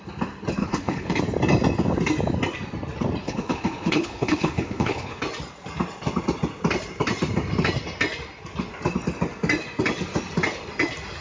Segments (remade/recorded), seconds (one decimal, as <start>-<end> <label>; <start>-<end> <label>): 0.0-0.6 recorded; 0.6-1.2 remade; 1.2-3.2 recorded; 3.2-5.2 remade; 5.2-11.2 recorded